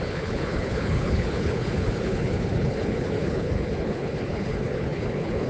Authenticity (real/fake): fake